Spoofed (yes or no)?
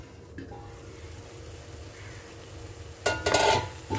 no